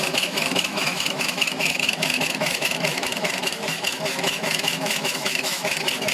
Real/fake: fake